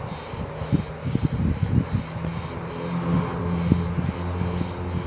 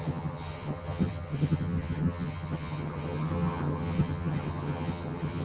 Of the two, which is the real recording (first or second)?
first